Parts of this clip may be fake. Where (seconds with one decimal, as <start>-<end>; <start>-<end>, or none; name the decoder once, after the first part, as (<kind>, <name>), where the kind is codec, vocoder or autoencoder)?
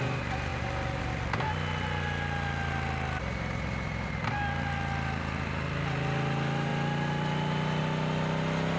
none